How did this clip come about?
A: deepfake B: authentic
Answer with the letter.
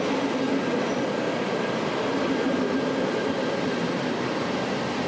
B